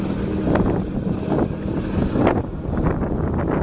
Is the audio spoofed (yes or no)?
no